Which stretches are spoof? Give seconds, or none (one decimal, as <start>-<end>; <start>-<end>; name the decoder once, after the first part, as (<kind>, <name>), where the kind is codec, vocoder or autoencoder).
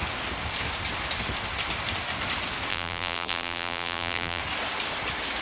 2.7-4.4 (vocoder, BigVGAN v2)